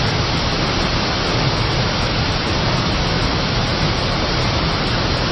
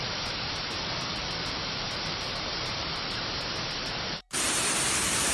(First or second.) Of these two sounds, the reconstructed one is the second